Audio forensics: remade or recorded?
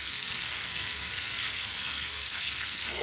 remade